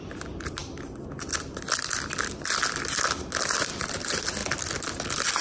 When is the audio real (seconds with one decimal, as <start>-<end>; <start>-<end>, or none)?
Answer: 0.0-5.4